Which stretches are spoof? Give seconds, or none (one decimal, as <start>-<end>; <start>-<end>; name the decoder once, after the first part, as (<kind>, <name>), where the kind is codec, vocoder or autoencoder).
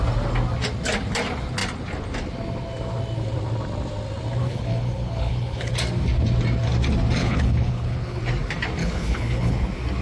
4.4-5.7 (codec, HILCodec); 7.2-8.2; 8.8-9.5